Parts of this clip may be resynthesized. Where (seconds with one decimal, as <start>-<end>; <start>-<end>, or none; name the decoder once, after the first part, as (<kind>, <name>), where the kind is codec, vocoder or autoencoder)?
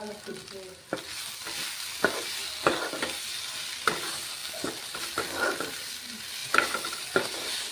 0.0-2.0 (vocoder, BigVGAN v2); 3.0-4.4; 5.0-7.7